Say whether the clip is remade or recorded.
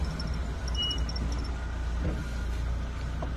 recorded